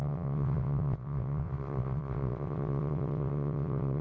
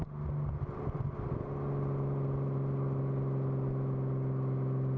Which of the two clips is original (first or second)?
second